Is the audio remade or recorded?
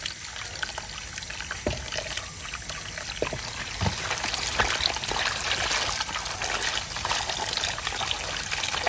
recorded